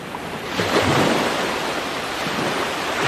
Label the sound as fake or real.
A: real